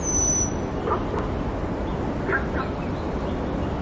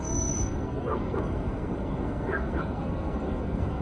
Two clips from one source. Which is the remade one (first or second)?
second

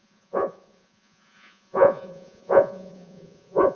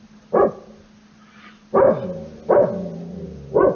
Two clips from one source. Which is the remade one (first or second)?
first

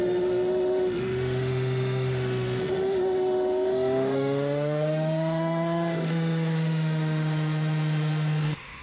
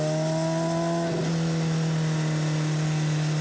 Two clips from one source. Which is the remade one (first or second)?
first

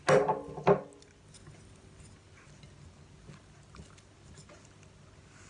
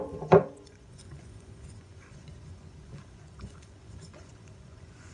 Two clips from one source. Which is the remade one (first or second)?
second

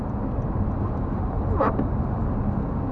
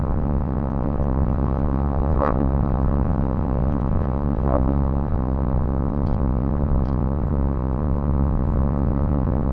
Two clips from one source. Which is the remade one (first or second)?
second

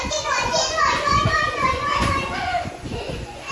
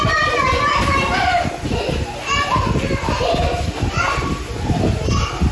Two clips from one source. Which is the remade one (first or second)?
first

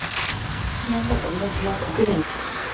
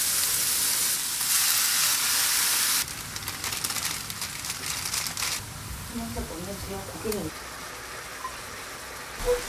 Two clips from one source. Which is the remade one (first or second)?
first